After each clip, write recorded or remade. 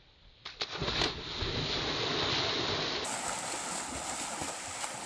recorded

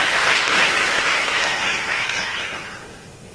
remade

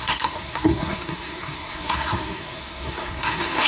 remade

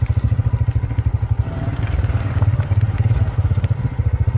recorded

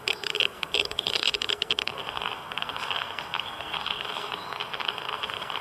remade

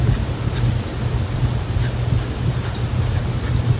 recorded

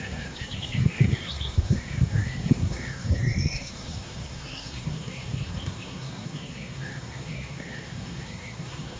remade